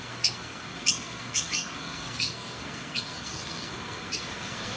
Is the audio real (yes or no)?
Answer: no